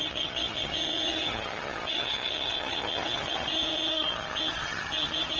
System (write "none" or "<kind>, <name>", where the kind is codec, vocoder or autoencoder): vocoder, HiFi-GAN